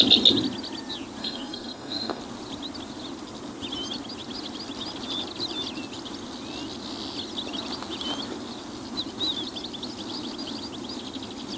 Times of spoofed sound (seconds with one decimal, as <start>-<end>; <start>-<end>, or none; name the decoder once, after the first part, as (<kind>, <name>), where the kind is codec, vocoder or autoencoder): 1.2-2.2 (codec, SNAC)